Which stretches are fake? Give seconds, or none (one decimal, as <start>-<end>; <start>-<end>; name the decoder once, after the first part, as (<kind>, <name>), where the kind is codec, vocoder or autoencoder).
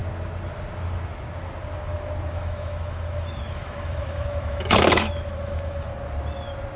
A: 2.3-5.9 (autoencoder, DAC-VAE)